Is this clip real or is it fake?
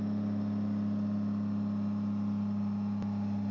real